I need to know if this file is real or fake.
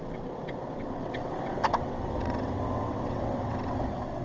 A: fake